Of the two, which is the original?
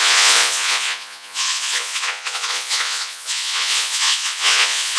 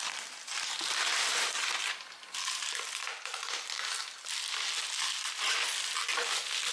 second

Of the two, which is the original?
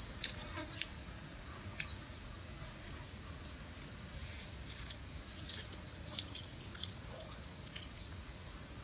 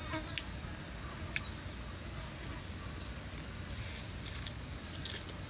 second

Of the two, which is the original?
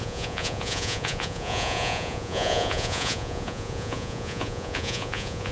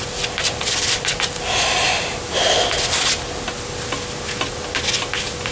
second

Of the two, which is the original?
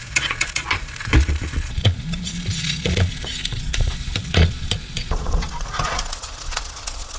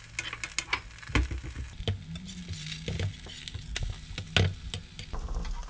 second